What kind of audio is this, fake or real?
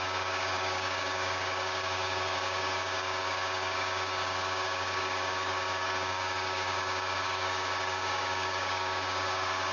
fake